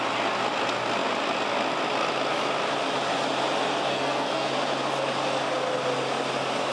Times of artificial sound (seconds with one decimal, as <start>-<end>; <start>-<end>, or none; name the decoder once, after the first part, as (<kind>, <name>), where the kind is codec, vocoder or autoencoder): 3.9-4.5 (codec, SNAC)